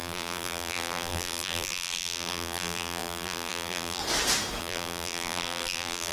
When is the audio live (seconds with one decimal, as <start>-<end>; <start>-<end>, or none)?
4.0-4.6